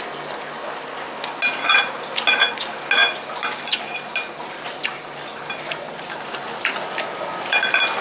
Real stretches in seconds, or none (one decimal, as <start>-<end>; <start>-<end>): 0.0-8.0